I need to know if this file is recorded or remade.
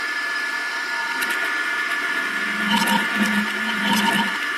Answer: remade